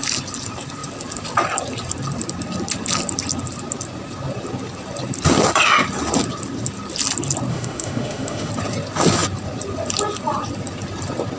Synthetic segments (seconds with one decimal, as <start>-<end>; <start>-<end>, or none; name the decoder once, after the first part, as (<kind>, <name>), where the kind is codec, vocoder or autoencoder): 7.5-8.5 (autoencoder, DAC-VAE)

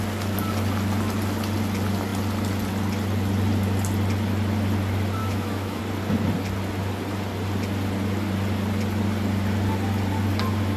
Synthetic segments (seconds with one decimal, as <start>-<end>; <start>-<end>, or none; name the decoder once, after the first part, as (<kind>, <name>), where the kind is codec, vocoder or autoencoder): 5.2-5.8 (autoencoder, DAC-VAE)